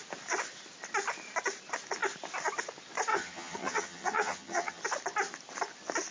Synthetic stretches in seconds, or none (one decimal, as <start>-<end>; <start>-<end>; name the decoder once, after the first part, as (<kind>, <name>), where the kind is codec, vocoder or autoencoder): 3.1-4.8 (vocoder, HiFi-GAN)